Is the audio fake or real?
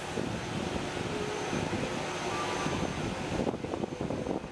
real